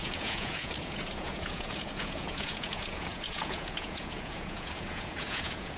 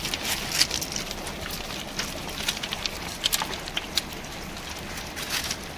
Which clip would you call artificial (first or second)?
first